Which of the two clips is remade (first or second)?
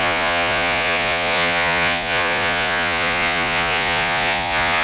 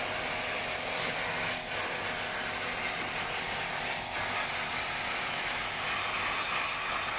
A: first